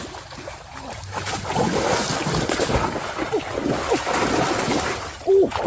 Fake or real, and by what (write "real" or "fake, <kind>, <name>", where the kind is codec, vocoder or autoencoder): real